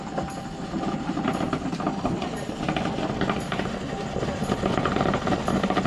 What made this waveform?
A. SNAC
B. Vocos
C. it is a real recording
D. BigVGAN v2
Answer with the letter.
C